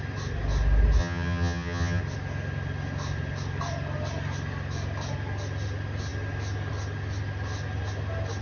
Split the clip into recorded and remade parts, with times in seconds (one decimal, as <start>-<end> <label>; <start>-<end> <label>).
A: 0.0-1.0 recorded; 1.0-2.0 remade; 2.0-8.4 recorded